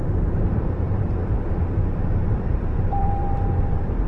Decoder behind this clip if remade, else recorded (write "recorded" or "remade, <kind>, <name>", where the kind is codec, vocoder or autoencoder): remade, vocoder, BigVGAN v2